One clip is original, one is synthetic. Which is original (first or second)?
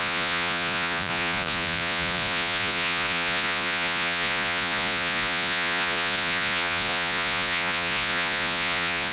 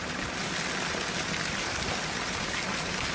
second